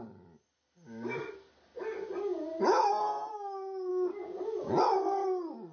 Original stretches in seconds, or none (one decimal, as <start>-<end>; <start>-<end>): 0.0-5.7